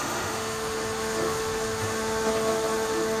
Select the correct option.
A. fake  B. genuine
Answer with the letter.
A